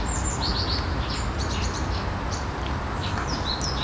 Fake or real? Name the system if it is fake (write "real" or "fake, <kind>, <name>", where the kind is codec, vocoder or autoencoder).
real